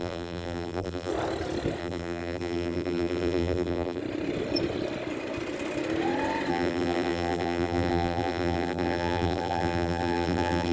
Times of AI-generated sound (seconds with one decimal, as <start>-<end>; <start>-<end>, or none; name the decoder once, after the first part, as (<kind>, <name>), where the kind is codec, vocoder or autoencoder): 0.0-1.1 (vocoder, BigVGAN v2); 1.8-4.0; 6.5-10.7